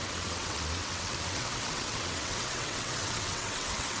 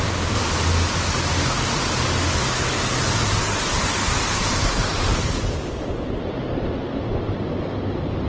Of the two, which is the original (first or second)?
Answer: second